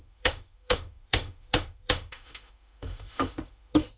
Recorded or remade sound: remade